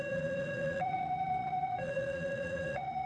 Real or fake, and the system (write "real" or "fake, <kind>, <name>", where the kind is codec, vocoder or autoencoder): fake, vocoder, Vocos